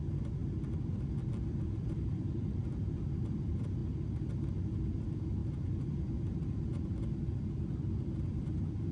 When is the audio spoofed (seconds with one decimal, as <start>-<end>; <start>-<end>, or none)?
0.0-0.4; 1.5-8.9